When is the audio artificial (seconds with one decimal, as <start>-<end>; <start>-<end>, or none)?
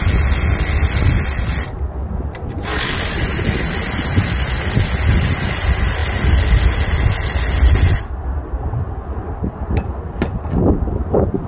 none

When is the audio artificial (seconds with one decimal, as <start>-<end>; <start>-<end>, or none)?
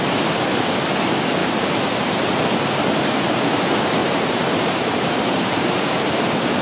1.4-2.1; 4.0-6.1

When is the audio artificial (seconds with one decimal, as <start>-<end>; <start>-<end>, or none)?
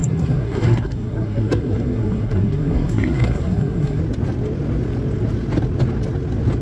0.0-4.0